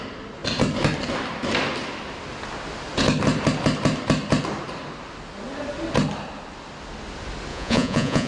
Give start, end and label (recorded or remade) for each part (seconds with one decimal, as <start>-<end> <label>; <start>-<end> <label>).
0.0-7.5 recorded; 7.5-8.3 remade